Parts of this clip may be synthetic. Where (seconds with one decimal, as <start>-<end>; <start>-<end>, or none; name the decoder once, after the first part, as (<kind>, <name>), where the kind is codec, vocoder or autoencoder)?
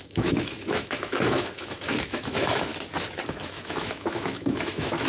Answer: 0.0-2.7 (autoencoder, DAC-VAE); 3.3-5.1